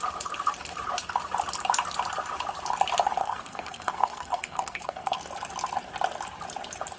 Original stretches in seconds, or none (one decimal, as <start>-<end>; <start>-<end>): 0.0-3.2; 5.2-7.0